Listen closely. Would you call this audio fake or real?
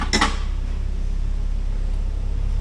real